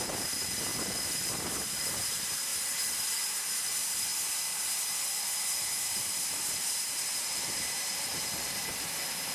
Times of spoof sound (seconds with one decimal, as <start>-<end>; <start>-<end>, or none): 0.0-0.7; 1.3-2.5; 3.5-4.1; 5.9-7.8; 8.7-9.3